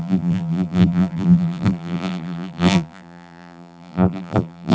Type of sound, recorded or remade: remade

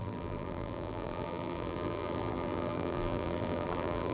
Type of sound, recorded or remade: remade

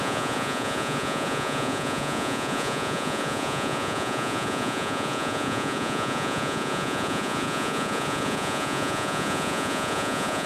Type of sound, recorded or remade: remade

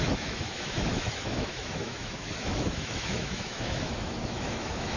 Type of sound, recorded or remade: remade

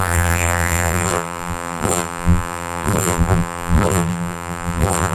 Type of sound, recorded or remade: remade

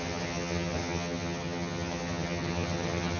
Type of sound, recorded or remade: remade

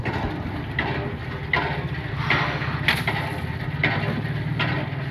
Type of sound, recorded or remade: recorded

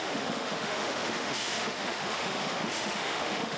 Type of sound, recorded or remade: remade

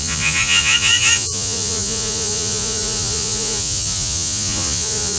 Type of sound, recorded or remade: remade